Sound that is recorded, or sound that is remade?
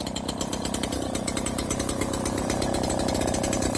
remade